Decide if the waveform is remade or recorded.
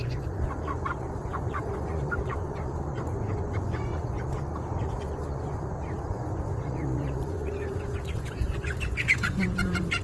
remade